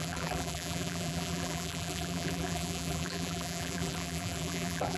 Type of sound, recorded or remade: remade